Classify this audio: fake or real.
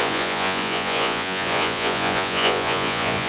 fake